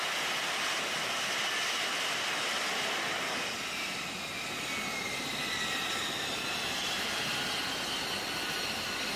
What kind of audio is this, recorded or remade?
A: recorded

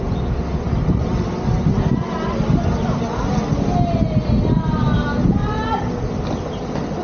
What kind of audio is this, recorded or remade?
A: recorded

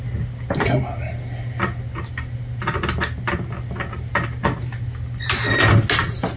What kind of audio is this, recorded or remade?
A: recorded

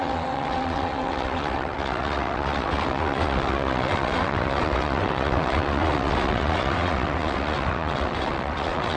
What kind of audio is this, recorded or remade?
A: remade